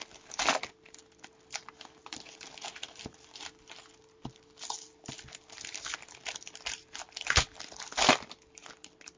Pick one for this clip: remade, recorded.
recorded